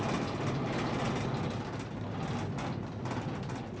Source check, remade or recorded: recorded